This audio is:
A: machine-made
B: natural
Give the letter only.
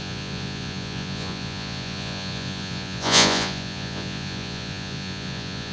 A